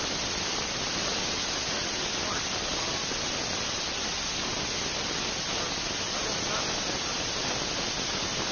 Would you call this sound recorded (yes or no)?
yes